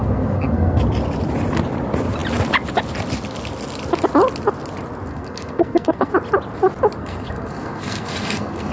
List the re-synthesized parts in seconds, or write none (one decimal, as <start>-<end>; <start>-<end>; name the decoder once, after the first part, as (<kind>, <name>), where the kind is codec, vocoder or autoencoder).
0.0-0.8 (codec, SNAC); 5.1-6.1; 7.0-8.7